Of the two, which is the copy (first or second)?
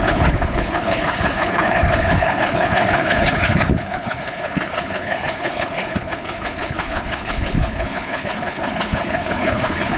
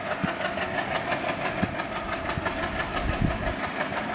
first